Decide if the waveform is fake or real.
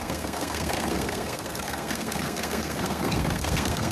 fake